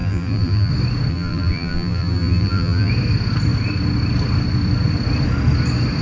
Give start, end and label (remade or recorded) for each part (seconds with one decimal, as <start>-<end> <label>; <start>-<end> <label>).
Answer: 0.0-0.7 remade; 0.7-1.1 recorded; 1.1-2.9 remade; 2.9-6.0 recorded